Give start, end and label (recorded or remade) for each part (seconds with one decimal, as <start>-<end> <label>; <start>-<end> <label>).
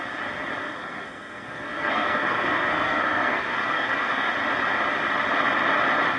0.0-0.6 recorded; 0.6-4.3 remade; 4.3-6.2 recorded